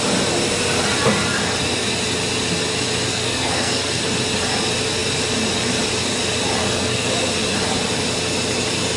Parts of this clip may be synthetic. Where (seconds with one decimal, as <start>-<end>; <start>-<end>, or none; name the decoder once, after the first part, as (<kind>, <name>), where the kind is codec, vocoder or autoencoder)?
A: 3.1-4.0 (codec, SNAC); 6.6-7.1